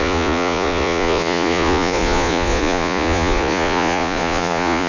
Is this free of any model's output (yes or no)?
no